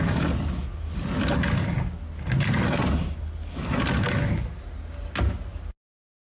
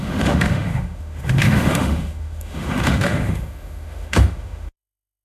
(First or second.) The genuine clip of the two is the first